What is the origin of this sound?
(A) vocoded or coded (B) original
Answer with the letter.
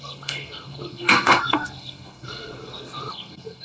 A